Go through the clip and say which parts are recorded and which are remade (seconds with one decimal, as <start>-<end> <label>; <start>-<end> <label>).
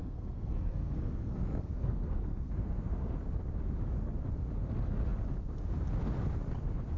0.0-3.2 remade; 3.2-7.0 recorded